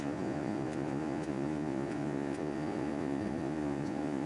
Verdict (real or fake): fake